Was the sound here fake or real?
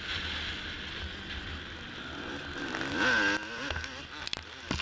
real